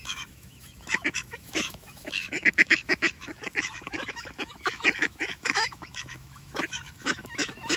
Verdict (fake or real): fake